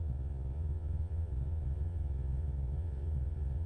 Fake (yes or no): yes